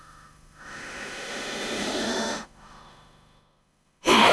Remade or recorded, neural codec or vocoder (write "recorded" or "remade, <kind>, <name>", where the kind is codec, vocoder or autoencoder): remade, autoencoder, DAC-VAE